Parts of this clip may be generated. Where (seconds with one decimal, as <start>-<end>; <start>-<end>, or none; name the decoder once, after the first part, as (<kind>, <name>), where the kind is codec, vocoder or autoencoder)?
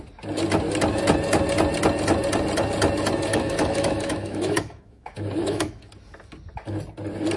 3.3-5.9 (autoencoder, DAC-VAE)